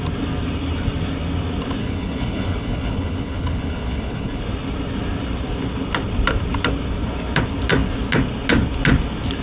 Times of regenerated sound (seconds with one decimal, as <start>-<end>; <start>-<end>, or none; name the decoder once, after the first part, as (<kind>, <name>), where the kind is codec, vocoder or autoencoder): 1.8-4.4 (codec, HILCodec)